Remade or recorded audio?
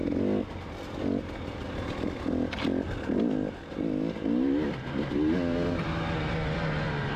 recorded